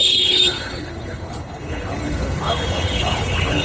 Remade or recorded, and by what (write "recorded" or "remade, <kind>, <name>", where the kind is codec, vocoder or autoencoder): remade, codec, HILCodec